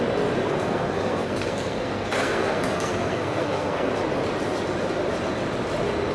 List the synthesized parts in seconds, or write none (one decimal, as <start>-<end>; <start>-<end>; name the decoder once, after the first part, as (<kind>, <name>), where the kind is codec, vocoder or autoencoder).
0.4-3.9 (codec, SNAC)